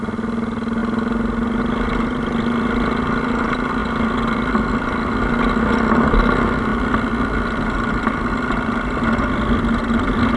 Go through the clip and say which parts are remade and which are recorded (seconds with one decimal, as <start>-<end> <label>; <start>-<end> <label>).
0.0-10.4 recorded